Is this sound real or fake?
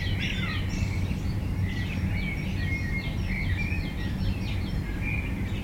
real